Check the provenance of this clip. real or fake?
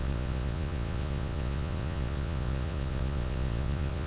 fake